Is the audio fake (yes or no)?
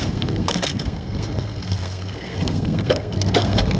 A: yes